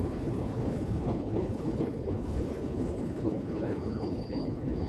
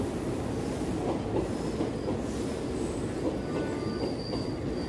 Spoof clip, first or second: first